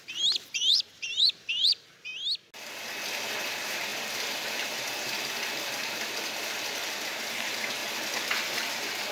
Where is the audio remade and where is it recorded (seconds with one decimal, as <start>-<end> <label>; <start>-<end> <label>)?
0.0-2.1 remade; 2.1-3.5 recorded; 3.5-7.8 remade; 7.8-8.3 recorded; 8.3-9.1 remade